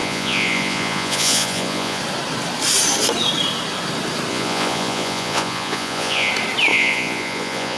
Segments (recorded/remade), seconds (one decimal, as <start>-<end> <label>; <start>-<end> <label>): 0.0-2.0 remade; 2.0-4.3 recorded; 4.3-6.3 remade; 6.3-6.7 recorded; 6.7-7.8 remade